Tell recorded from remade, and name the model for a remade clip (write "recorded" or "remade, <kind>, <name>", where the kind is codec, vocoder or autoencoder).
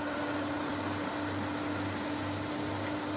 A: recorded